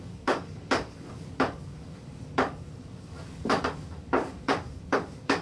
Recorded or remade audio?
remade